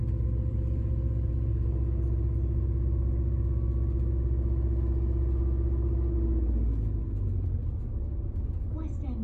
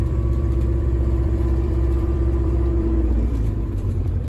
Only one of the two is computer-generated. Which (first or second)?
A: second